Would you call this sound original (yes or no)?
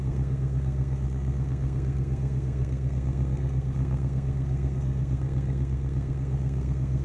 no